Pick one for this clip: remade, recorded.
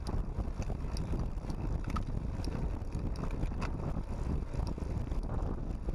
recorded